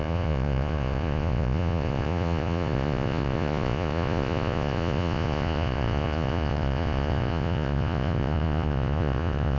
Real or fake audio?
fake